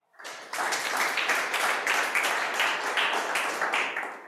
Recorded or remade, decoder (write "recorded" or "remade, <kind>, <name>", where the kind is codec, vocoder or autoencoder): recorded